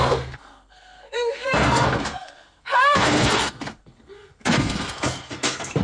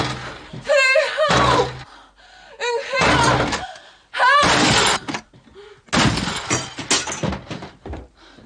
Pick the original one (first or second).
second